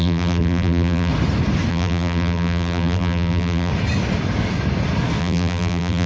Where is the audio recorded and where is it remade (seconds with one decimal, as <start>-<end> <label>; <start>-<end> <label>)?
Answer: 0.0-1.1 remade; 1.1-1.7 recorded; 1.7-3.7 remade; 3.7-5.2 recorded; 5.2-6.1 remade